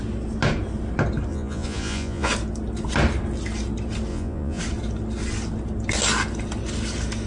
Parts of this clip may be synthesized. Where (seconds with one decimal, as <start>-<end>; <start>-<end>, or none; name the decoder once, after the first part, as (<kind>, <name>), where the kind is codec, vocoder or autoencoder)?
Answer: 1.3-2.3 (vocoder, Vocos); 4.1-4.6